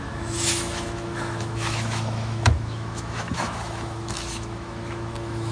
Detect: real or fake fake